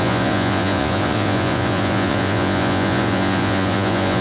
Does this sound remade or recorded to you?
remade